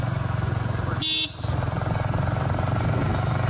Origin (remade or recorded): recorded